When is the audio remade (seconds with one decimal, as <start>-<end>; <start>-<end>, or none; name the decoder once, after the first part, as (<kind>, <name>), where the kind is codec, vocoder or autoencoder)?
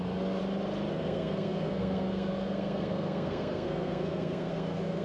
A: 0.0-0.4 (codec, SNAC); 0.9-5.0